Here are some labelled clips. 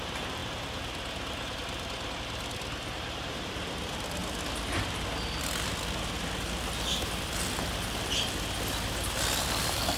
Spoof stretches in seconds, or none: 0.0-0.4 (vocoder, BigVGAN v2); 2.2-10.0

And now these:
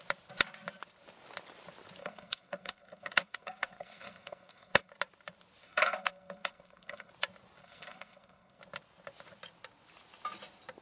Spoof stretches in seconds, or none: 2.0-4.9 (codec, SNAC); 5.6-7.1; 7.6-8.6